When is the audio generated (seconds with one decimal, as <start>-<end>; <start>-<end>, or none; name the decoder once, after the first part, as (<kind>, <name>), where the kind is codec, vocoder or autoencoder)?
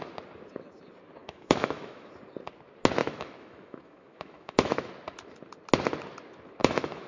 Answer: 1.2-2.1 (autoencoder, DAC-VAE); 3.0-4.9; 6.6-7.1